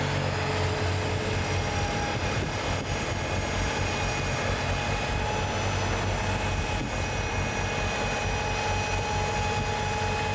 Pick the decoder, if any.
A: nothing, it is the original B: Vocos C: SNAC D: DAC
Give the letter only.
A